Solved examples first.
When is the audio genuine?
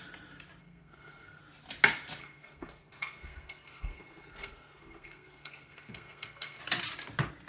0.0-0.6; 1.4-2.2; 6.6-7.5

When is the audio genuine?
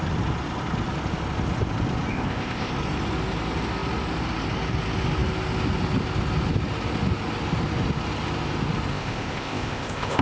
0.0-2.1; 2.7-8.9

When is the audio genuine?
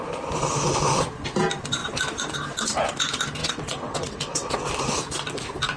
0.0-3.4; 4.7-5.8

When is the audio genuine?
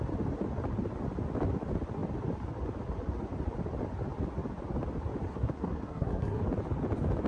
0.0-5.3; 6.4-7.3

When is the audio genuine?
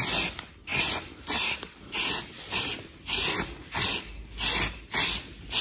0.0-0.7; 2.0-5.6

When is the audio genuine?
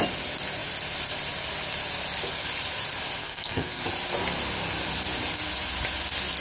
0.0-3.2; 3.8-6.4